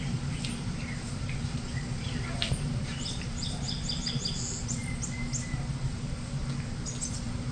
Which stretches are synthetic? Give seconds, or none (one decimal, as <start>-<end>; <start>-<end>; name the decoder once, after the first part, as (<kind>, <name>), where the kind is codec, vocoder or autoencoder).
0.0-4.8 (vocoder, BigVGAN v2); 5.9-6.4; 7.1-7.5